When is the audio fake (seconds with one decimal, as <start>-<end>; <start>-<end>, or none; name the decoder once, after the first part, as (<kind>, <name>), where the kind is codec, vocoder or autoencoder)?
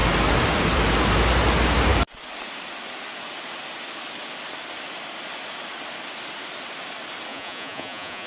7.3-8.3 (vocoder, Vocos)